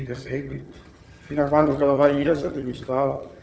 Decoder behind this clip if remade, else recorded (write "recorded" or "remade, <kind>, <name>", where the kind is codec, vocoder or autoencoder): remade, vocoder, HiFi-GAN